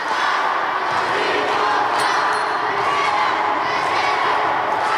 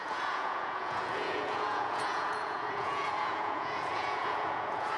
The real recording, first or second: first